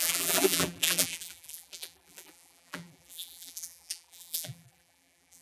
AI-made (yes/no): yes